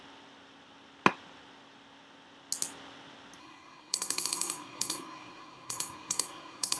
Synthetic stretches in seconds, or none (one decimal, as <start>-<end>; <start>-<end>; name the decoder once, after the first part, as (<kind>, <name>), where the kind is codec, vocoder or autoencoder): 3.4-6.8 (codec, SNAC)